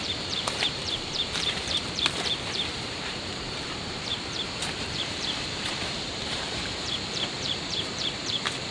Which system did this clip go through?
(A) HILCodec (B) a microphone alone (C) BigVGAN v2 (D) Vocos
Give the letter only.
C